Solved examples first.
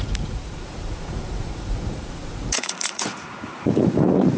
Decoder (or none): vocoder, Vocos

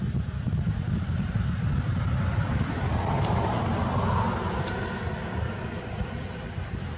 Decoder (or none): none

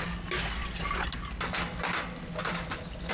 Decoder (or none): none